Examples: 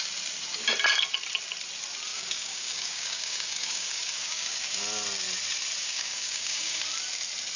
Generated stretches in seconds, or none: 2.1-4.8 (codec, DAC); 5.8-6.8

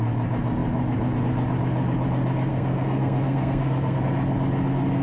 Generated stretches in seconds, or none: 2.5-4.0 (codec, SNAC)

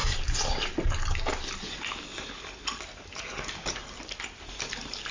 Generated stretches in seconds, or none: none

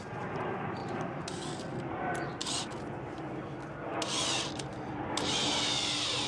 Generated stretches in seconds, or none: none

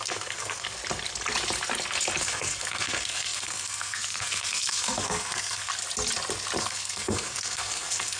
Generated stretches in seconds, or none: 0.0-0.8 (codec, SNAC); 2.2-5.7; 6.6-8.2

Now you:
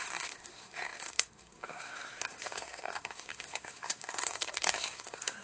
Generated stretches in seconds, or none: 0.0-5.4 (codec, SNAC)

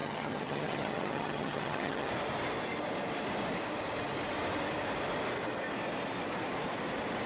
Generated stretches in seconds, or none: 0.0-2.1 (vocoder, HiFi-GAN)